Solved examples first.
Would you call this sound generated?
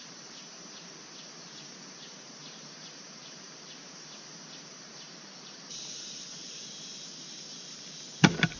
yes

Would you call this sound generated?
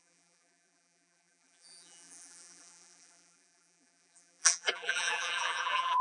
yes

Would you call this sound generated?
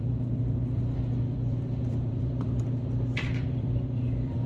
yes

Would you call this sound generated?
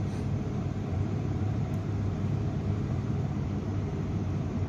yes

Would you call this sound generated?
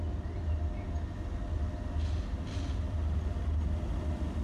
no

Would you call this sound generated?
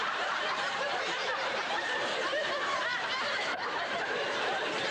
yes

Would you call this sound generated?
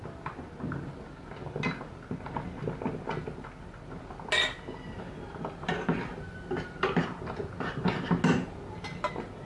no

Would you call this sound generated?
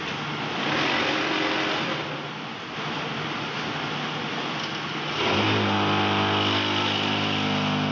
no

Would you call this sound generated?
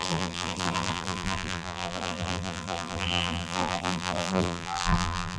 yes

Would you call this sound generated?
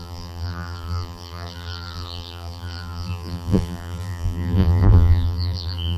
yes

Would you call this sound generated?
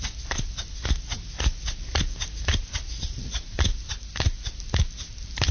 no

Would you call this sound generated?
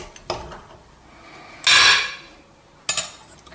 no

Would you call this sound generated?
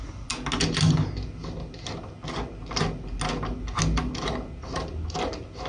no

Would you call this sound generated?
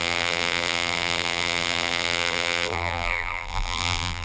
yes